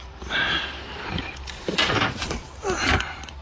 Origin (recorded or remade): remade